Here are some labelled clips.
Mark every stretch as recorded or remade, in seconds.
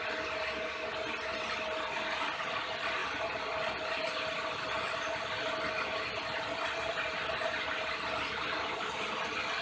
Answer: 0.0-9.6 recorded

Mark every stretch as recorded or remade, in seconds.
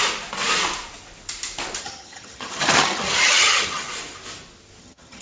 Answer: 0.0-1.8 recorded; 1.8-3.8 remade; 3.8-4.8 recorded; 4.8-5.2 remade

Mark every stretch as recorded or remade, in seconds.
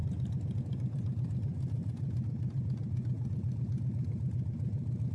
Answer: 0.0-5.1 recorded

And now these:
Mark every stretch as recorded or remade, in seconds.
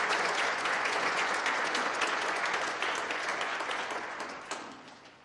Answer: 0.0-5.2 remade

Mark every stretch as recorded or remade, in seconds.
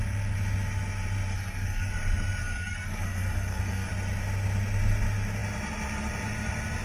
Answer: 0.0-1.3 recorded; 1.3-1.9 remade; 1.9-2.4 recorded; 2.4-3.9 remade; 3.9-6.8 recorded